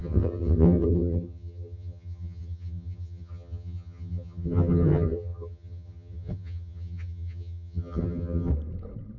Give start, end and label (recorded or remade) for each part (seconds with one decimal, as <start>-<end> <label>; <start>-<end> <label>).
0.0-8.5 remade; 8.5-9.2 recorded